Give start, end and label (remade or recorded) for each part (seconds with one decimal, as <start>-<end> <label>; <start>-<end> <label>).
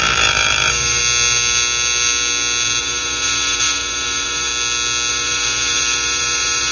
0.0-1.0 remade; 1.0-2.8 recorded; 2.8-4.5 remade; 4.5-5.1 recorded; 5.1-6.7 remade